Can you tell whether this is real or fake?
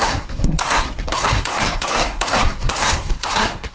fake